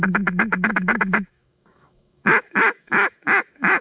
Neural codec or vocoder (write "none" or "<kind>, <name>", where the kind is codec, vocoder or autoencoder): autoencoder, DAC-VAE